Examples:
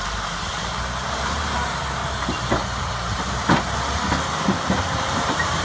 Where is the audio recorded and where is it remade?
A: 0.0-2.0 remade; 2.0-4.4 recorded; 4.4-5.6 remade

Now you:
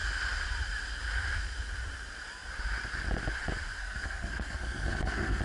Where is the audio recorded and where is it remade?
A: 0.0-3.8 recorded; 3.8-5.4 remade